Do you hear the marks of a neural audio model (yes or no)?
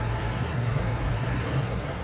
yes